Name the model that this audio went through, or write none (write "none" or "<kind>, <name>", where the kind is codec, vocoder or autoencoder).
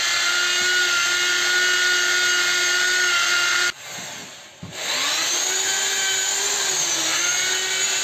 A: none